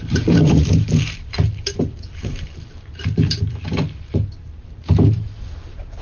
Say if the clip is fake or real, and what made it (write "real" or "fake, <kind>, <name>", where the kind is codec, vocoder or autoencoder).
fake, vocoder, BigVGAN v2